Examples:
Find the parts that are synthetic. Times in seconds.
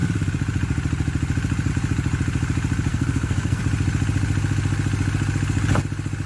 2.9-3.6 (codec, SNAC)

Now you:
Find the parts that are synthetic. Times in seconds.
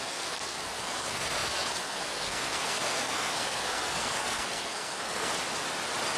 0.0-5.3 (codec, SNAC)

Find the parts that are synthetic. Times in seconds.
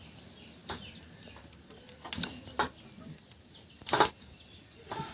none